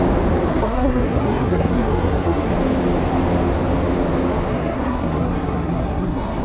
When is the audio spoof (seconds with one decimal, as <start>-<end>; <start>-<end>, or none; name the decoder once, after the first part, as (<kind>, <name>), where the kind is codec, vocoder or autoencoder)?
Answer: 0.5-2.5 (codec, SNAC); 4.5-6.4